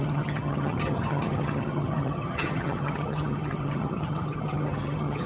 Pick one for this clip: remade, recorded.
remade